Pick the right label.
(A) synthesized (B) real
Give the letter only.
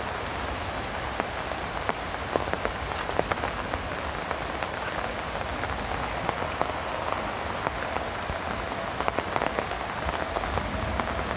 B